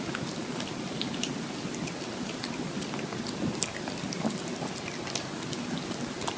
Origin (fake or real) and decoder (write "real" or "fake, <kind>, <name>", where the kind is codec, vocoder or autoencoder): real